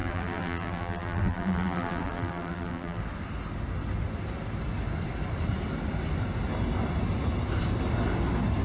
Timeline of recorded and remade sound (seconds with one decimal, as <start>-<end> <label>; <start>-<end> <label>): 0.0-3.0 remade; 3.0-8.6 recorded